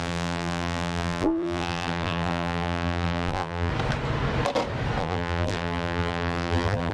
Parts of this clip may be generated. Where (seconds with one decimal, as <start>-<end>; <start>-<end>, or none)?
0.0-3.7; 5.0-6.9